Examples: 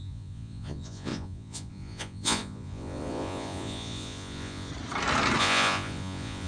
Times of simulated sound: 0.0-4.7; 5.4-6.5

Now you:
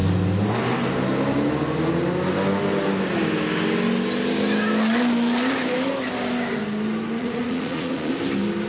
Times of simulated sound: 7.2-8.1